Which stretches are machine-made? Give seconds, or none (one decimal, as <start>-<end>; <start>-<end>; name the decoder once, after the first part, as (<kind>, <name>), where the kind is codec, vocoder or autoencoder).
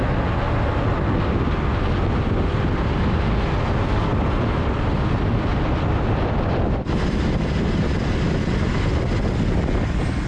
4.1-8.7 (vocoder, BigVGAN v2)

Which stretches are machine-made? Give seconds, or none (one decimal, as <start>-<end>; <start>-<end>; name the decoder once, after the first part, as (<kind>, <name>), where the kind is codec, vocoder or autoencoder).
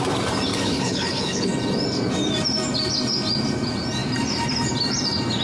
0.5-1.5 (codec, HILCodec)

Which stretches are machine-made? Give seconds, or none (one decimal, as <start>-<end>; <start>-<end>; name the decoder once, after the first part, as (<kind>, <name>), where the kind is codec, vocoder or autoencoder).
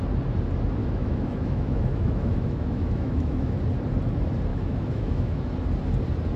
0.8-3.5 (autoencoder, DAC-VAE); 4.5-5.4